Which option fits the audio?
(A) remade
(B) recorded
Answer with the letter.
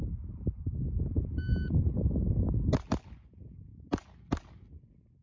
B